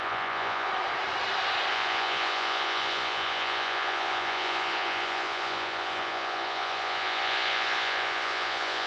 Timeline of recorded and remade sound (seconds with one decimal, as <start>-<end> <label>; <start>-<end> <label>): 0.0-0.7 remade; 0.7-1.7 recorded; 1.7-8.9 remade